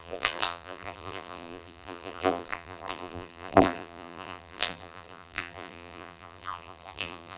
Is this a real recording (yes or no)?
no